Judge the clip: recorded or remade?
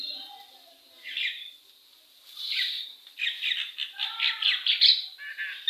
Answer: remade